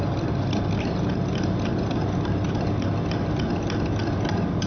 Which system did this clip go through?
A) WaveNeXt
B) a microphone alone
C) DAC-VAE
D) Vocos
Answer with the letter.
B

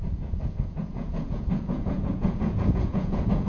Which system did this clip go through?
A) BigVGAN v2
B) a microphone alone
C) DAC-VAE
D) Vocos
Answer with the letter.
D